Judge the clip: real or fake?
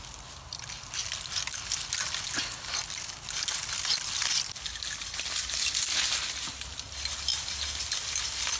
real